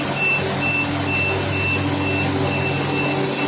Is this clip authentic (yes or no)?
yes